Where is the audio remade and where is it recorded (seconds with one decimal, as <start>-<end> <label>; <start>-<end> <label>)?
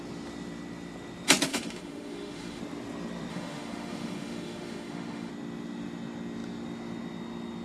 0.0-1.5 recorded; 1.5-2.6 remade; 2.6-3.3 recorded; 3.3-5.3 remade; 5.3-7.6 recorded